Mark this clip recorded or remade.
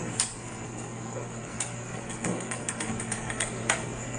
remade